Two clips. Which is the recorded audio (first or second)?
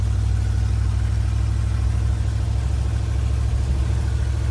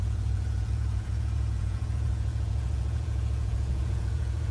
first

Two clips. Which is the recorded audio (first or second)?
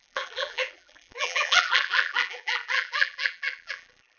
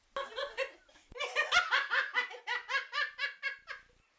second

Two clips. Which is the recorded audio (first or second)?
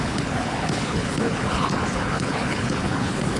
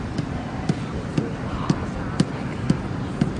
second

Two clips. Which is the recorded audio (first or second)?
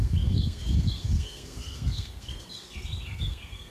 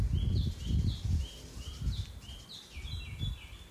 second